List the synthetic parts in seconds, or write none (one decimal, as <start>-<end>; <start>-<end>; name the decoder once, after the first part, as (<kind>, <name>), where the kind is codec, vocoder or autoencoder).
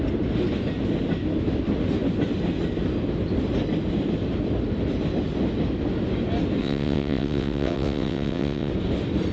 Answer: 6.6-8.7 (vocoder, WaveNeXt)